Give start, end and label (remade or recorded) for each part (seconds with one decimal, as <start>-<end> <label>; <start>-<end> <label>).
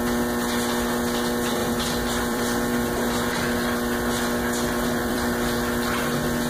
0.0-1.6 recorded; 1.6-3.3 remade; 3.3-5.0 recorded; 5.0-6.0 remade; 6.0-6.5 recorded